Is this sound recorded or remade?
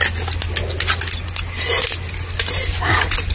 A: recorded